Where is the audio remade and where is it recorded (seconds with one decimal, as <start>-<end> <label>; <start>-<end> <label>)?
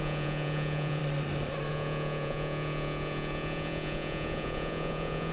0.0-1.0 remade; 1.0-1.7 recorded; 1.7-5.3 remade